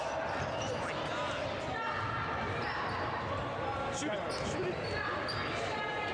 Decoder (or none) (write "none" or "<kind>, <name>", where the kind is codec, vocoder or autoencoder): none